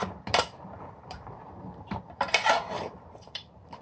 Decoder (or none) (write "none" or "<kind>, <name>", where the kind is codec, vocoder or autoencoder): vocoder, BigVGAN v2